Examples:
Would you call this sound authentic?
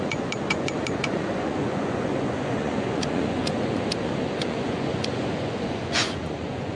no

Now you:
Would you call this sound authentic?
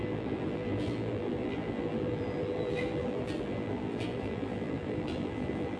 no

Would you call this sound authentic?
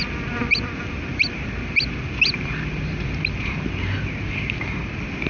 yes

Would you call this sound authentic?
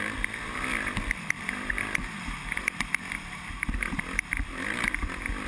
yes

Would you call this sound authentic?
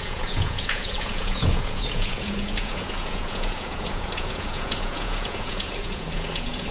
no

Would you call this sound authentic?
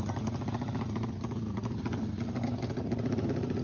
yes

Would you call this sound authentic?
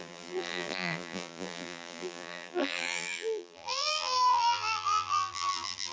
no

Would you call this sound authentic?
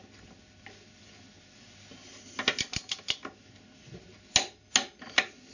yes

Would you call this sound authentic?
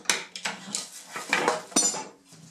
yes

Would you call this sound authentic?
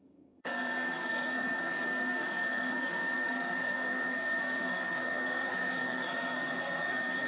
no